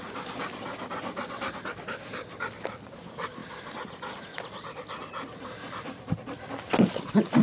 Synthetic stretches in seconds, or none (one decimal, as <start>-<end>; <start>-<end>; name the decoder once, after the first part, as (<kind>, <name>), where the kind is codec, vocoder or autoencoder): none